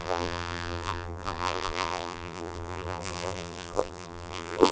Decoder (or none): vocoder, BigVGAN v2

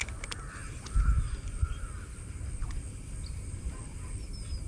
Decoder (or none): none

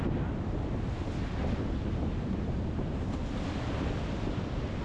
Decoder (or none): none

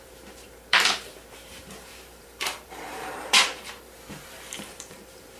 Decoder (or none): vocoder, BigVGAN v2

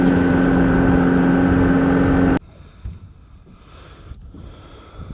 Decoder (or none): none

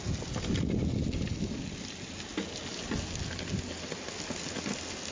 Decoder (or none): none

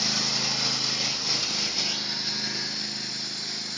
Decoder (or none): none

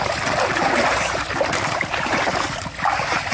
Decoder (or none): none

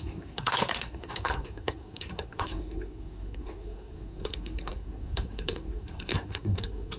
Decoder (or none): codec, SNAC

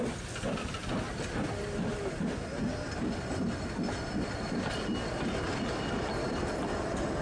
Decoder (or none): none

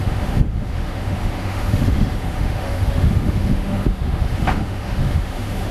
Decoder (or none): autoencoder, DAC-VAE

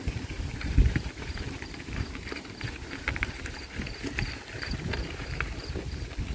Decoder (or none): vocoder, BigVGAN v2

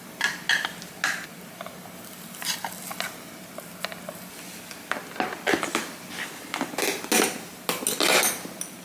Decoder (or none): none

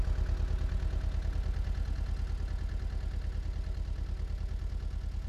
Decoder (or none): none